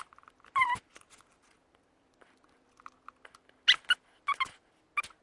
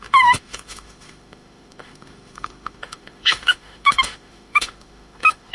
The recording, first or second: first